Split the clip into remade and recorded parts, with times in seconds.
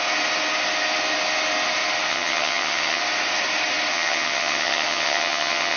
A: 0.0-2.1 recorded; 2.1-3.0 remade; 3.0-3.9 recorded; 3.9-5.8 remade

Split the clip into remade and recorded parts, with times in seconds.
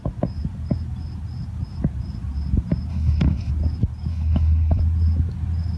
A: 0.0-2.9 recorded; 2.9-3.5 remade; 3.5-4.1 recorded; 4.1-4.8 remade; 4.8-5.8 recorded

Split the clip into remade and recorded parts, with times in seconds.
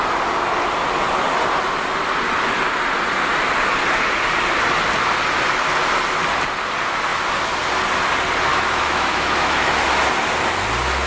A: 0.0-8.5 recorded; 8.5-9.9 remade; 9.9-11.1 recorded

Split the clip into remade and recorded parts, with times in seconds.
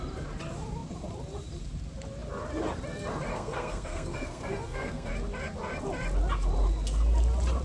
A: 0.0-3.3 recorded; 3.3-5.1 remade; 5.1-7.6 recorded